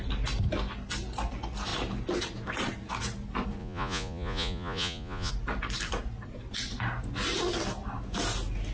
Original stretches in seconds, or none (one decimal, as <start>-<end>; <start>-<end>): 0.0-3.6; 5.3-8.7